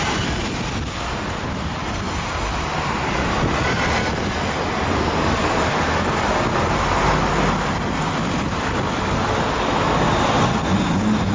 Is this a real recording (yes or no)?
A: yes